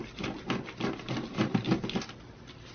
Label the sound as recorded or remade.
recorded